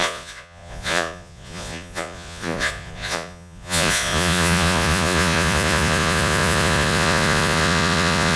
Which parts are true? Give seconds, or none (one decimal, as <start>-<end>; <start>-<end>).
none